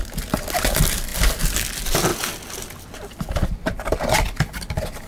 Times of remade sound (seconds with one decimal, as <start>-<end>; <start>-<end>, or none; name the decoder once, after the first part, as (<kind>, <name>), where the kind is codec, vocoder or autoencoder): none